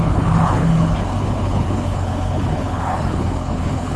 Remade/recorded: remade